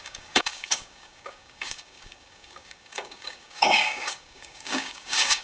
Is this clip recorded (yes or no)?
no